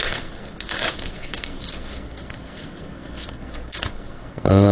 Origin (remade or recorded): remade